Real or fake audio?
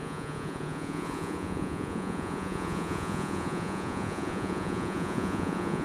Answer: fake